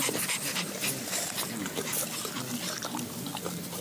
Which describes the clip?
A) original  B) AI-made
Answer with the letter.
A